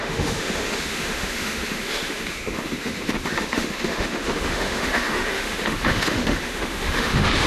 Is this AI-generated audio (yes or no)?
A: yes